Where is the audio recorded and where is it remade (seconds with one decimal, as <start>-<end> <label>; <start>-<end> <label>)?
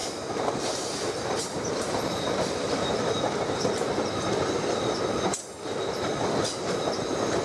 0.0-2.0 remade; 2.0-7.4 recorded